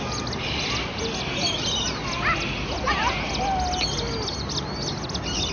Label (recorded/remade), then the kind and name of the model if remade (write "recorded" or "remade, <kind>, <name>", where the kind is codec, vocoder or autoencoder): recorded